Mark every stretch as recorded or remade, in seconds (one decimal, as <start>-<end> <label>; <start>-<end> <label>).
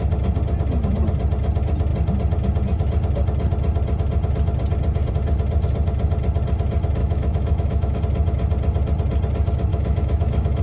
0.0-7.0 recorded; 7.0-8.0 remade; 8.0-9.7 recorded; 9.7-10.6 remade